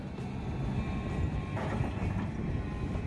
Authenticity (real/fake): real